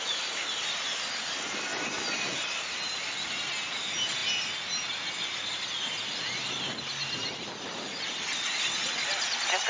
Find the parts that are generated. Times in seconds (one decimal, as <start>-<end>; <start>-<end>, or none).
none